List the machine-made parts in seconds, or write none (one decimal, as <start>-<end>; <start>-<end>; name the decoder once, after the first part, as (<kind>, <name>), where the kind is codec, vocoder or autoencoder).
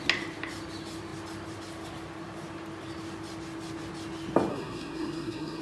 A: 4.5-5.6 (codec, SNAC)